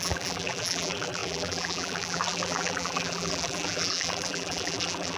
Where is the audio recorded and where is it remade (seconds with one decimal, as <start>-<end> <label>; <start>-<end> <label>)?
0.0-5.2 remade

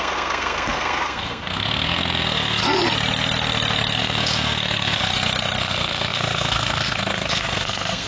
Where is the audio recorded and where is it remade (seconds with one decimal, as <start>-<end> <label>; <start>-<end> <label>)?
0.0-2.6 remade; 2.6-4.0 recorded; 4.0-5.1 remade; 5.1-5.6 recorded; 5.6-8.1 remade

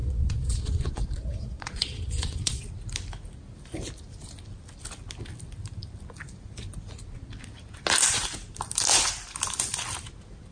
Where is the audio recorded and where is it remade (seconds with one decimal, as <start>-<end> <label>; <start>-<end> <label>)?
0.0-2.6 remade; 2.6-10.5 recorded

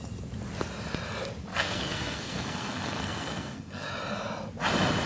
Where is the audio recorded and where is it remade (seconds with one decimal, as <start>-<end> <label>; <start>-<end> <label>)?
0.0-1.5 recorded; 1.5-3.9 remade; 3.9-5.1 recorded

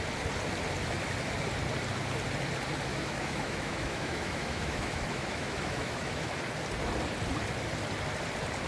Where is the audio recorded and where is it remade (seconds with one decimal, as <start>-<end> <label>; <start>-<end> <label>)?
0.0-2.9 recorded; 2.9-6.3 remade; 6.3-8.7 recorded

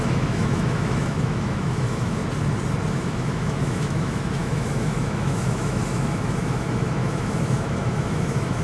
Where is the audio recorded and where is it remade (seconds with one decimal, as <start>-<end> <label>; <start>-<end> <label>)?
0.0-2.2 remade; 2.2-2.9 recorded; 2.9-8.6 remade

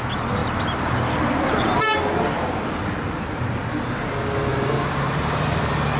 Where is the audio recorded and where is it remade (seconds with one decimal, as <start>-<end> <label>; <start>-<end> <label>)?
0.0-4.5 recorded; 4.5-5.6 remade; 5.6-6.0 recorded

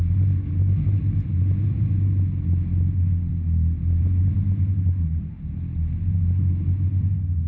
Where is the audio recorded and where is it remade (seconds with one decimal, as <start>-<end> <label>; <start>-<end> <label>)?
0.0-7.5 recorded